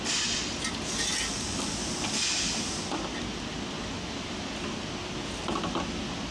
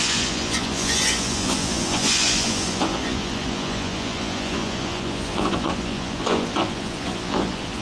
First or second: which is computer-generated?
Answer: second